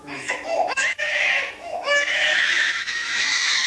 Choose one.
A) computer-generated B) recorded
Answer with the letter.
A